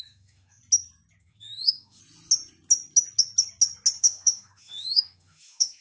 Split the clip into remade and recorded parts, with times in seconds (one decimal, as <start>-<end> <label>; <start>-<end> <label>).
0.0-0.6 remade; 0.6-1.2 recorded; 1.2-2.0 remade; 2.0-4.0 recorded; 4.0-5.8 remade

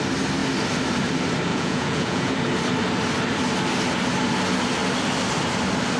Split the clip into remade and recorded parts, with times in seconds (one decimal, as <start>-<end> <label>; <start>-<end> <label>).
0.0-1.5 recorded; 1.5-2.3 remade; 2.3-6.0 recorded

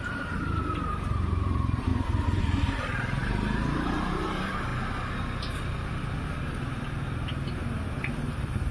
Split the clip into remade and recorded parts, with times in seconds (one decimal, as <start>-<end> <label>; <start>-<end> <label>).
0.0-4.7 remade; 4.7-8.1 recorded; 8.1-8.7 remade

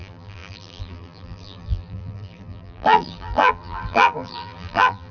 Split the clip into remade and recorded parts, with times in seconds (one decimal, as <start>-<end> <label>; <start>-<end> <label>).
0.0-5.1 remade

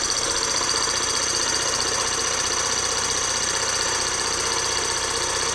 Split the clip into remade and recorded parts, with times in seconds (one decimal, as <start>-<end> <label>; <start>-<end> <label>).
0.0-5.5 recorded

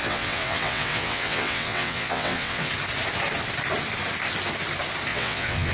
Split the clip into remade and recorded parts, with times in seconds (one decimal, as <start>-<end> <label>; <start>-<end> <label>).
0.0-2.7 remade; 2.7-5.1 recorded; 5.1-5.7 remade

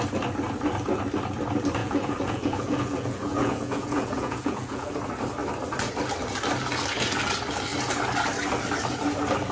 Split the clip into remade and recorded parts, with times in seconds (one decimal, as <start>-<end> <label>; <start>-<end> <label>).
0.0-1.8 recorded; 1.8-4.9 remade; 4.9-9.5 recorded